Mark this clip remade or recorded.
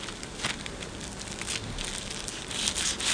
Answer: recorded